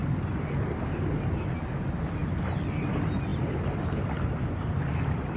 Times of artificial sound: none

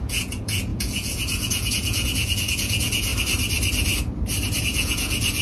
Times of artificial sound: 0.0-3.1; 4.6-5.4

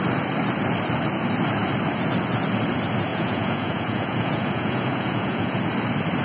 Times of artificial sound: 3.1-5.6

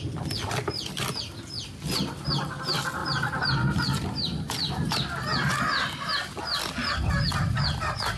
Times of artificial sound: 3.0-4.9

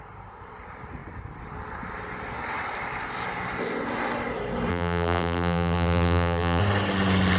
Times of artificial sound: 4.7-6.6

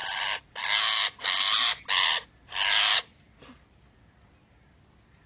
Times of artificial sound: none